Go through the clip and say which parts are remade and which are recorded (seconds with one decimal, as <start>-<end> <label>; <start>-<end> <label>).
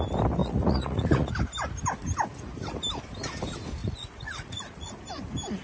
0.0-0.4 recorded; 0.4-1.3 remade; 1.3-3.8 recorded; 3.8-5.0 remade; 5.0-5.6 recorded